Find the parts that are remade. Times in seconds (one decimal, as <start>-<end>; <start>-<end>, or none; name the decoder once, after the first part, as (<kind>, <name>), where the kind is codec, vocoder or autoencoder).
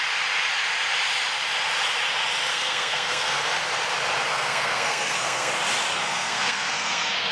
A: 2.5-3.4 (codec, SNAC); 4.3-5.5; 5.9-7.3